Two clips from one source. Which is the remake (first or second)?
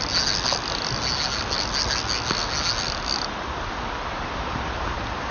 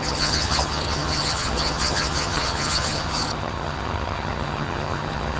second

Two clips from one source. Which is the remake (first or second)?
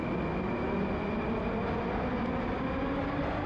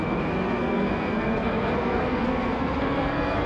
second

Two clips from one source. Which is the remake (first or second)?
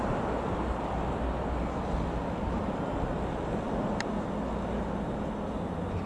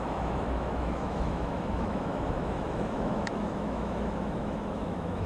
second